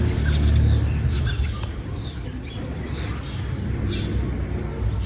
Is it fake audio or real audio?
real